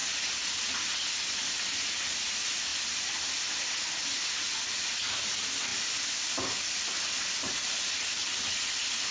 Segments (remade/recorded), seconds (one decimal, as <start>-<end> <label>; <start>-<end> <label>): 0.0-9.1 recorded